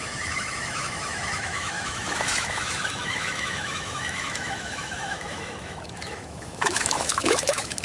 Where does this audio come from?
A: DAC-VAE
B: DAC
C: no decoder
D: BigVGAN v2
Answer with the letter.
A